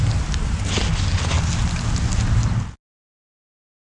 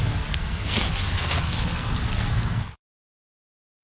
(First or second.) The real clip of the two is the first